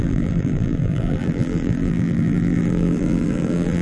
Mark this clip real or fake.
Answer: fake